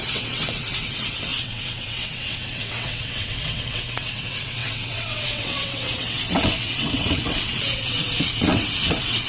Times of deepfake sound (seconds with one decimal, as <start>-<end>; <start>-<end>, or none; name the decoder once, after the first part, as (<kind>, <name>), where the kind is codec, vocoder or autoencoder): 0.0-9.3 (vocoder, WaveNeXt)